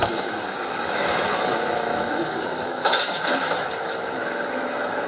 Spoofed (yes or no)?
yes